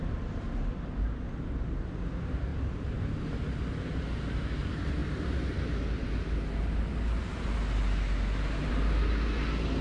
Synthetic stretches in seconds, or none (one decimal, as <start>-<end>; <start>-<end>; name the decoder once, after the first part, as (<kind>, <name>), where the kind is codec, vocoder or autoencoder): none